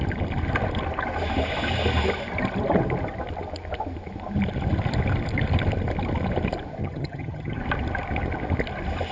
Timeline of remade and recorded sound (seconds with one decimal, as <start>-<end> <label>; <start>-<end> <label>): 0.0-6.8 recorded; 6.8-7.6 remade; 7.6-9.1 recorded